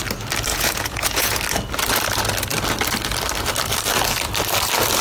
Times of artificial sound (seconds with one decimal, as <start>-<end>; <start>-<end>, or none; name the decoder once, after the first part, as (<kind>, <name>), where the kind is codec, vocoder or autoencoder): 0.5-1.4 (vocoder, Vocos)

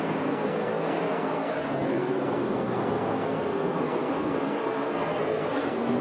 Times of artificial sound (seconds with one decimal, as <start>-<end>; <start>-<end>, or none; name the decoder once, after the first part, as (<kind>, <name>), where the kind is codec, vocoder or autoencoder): 0.0-6.0 (codec, SNAC)

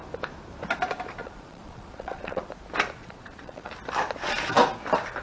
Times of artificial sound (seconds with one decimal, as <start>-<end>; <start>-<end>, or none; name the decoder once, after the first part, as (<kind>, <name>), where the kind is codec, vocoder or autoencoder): 1.2-2.4 (vocoder, Vocos); 3.0-3.7

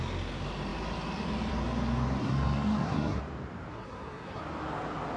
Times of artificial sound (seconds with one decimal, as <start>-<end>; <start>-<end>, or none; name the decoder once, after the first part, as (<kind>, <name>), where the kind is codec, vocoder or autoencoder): 2.2-3.2 (codec, SNAC); 3.7-4.4